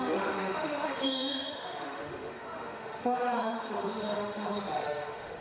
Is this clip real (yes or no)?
no